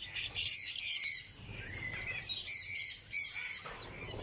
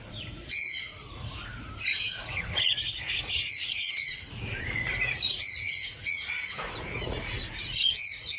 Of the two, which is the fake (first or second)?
second